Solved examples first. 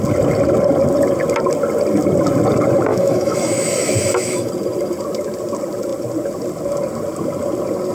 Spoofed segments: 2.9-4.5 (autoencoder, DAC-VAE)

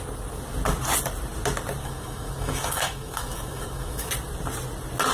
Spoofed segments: 1.8-4.1 (autoencoder, DAC-VAE)

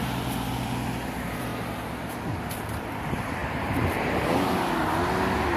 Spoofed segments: 0.0-1.5 (vocoder, BigVGAN v2); 2.5-5.6

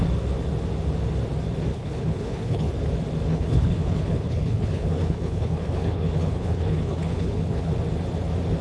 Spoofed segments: 1.7-2.7 (codec, HILCodec); 3.3-7.7

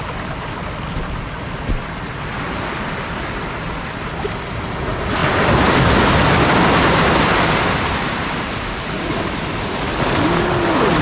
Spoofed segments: 5.2-5.7 (vocoder, BigVGAN v2)

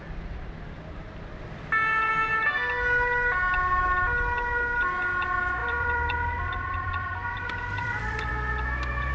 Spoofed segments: 5.6-8.3 (vocoder, BigVGAN v2)